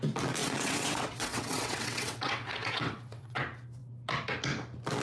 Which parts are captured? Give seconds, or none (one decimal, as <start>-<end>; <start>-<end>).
0.0-0.4; 3.4-5.0

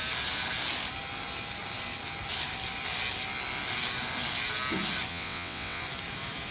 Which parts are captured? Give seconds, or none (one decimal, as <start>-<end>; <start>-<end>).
0.0-5.1; 5.8-6.5